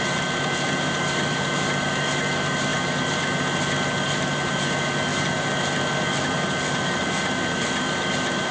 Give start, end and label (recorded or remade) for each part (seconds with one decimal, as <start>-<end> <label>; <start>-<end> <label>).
0.0-8.5 recorded

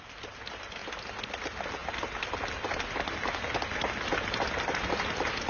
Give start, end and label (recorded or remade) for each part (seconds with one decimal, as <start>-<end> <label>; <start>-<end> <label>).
0.0-5.5 recorded

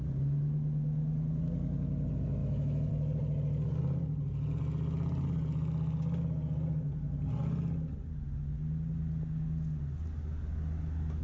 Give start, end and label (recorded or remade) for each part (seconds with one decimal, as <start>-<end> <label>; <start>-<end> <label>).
0.0-2.4 recorded; 2.4-2.9 remade; 2.9-11.2 recorded

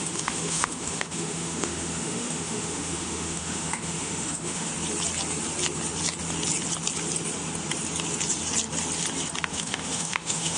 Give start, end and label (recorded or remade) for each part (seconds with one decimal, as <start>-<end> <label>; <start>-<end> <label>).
0.0-4.7 remade; 4.7-9.5 recorded; 9.5-10.6 remade